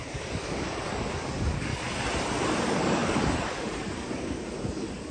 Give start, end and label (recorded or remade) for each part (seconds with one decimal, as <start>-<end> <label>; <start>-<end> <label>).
0.0-1.7 remade; 1.7-2.6 recorded; 2.6-5.1 remade